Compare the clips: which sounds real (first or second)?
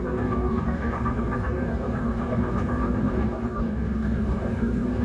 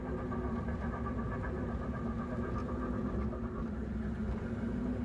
second